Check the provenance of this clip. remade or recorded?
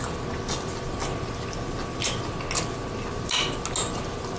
recorded